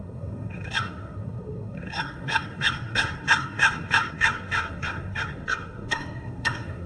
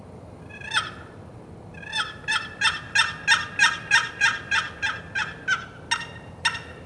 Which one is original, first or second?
second